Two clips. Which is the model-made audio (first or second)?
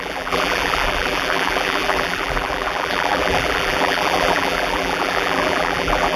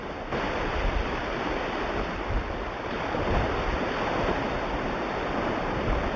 first